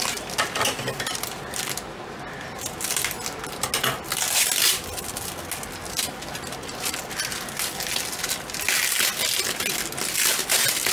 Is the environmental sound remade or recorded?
recorded